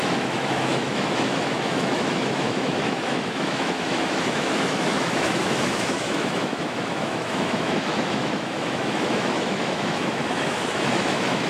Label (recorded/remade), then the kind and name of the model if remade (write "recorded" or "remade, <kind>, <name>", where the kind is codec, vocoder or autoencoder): remade, autoencoder, DAC-VAE